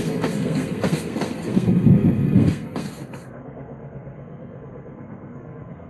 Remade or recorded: remade